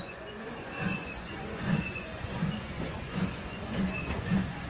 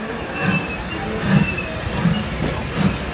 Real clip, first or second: second